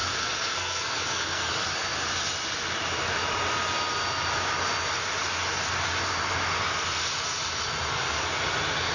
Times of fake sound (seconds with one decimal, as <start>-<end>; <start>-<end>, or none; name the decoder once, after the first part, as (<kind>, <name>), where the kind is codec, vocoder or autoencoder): 0.0-1.5 (codec, SNAC)